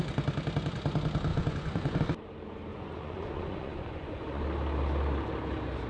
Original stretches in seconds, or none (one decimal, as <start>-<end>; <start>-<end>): 0.0-1.3; 2.0-2.7; 4.4-5.9